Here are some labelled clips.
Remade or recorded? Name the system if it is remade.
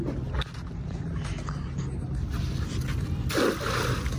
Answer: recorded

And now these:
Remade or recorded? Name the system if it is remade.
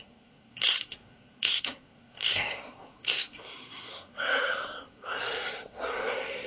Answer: remade, codec, SNAC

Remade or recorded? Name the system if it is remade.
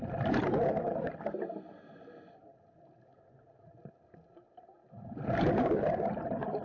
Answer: recorded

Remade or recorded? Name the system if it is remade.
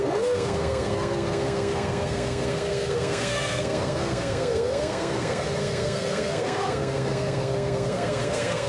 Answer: remade, codec, SNAC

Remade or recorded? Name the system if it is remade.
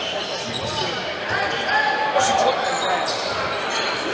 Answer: recorded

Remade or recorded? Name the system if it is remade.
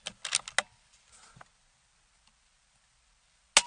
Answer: recorded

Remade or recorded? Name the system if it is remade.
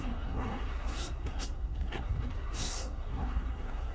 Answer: remade, codec, SNAC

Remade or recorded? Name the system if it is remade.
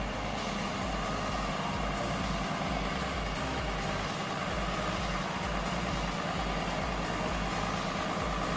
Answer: recorded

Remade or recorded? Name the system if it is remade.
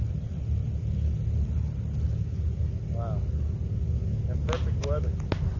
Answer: recorded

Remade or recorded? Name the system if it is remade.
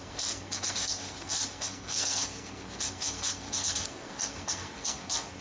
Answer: remade, codec, SNAC